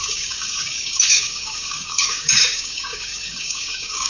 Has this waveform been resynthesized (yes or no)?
yes